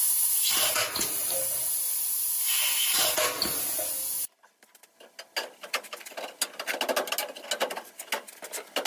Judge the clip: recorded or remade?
recorded